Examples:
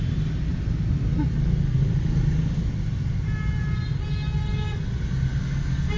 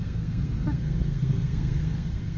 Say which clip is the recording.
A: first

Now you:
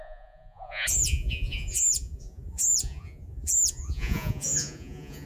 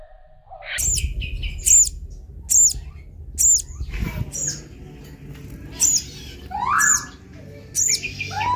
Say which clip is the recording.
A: second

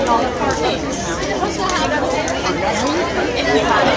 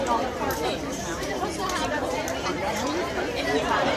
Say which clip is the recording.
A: first